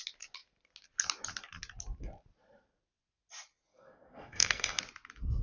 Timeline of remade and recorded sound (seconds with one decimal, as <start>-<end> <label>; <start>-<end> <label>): 0.0-3.7 recorded; 3.7-4.8 remade; 4.8-5.4 recorded